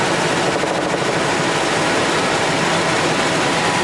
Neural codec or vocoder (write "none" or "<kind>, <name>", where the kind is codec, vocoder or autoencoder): none